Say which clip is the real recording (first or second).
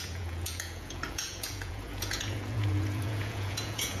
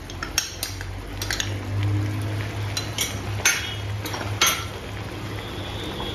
second